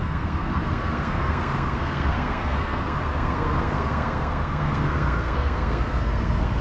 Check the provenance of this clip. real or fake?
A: fake